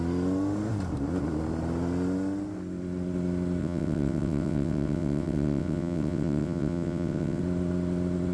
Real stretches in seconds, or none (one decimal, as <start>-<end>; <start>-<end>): 0.0-3.6; 7.4-8.3